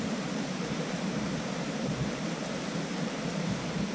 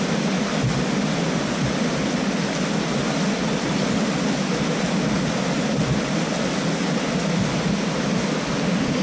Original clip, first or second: second